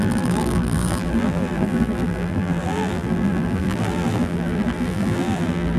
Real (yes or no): no